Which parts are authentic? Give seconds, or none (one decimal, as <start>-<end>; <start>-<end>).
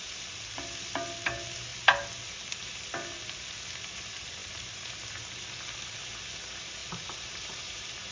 0.0-4.4; 5.0-6.8